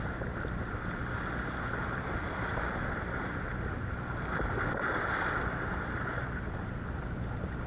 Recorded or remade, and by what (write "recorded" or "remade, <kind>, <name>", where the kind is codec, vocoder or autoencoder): recorded